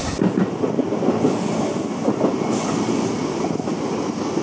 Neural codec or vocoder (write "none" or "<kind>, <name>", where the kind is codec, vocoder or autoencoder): none